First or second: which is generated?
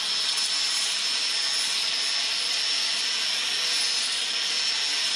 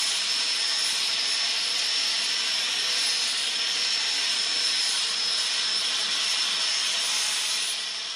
second